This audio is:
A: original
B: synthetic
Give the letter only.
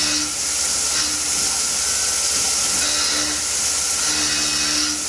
A